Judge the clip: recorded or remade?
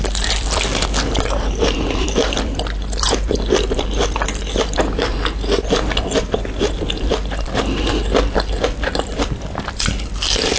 remade